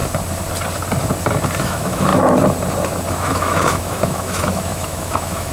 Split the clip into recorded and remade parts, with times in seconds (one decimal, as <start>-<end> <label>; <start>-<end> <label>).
0.0-1.6 recorded; 1.6-2.1 remade; 2.1-3.1 recorded; 3.1-5.5 remade